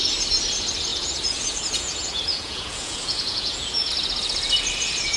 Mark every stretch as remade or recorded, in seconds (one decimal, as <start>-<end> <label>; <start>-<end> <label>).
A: 0.0-0.9 recorded; 0.9-3.9 remade; 3.9-5.2 recorded